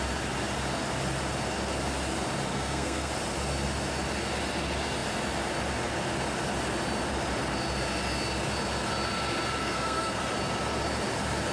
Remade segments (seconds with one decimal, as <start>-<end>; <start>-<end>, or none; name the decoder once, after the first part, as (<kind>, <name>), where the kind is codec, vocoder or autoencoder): 2.5-3.1 (codec, SNAC); 9.6-10.2